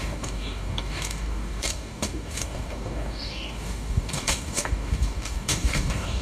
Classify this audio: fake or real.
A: fake